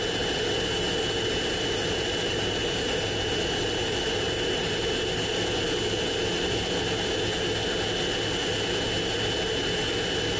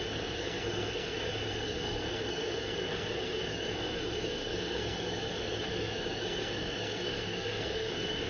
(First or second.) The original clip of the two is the first